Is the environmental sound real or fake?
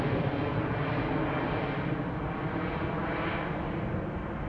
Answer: real